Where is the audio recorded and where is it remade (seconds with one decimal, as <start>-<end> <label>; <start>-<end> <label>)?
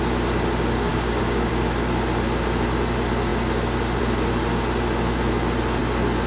0.0-0.9 recorded; 0.9-1.5 remade; 1.5-6.3 recorded